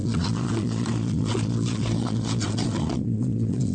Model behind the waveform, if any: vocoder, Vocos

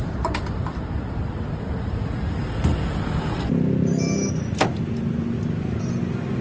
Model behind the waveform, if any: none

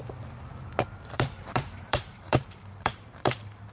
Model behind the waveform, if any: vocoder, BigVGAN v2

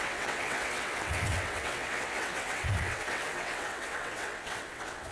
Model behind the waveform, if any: vocoder, WaveNeXt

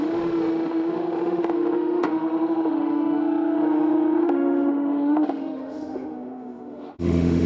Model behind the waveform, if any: autoencoder, DAC-VAE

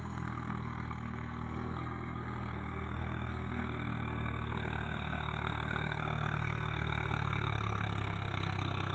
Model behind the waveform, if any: codec, SNAC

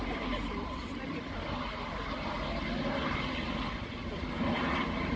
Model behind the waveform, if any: none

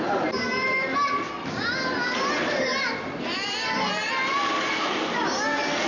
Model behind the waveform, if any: none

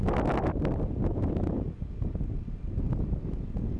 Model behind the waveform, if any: none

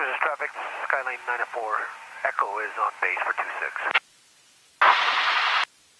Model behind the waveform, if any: none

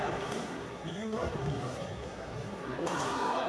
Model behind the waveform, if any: codec, SNAC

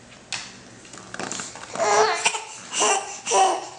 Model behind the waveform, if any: none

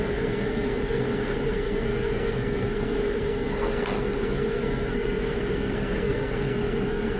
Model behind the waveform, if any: codec, SNAC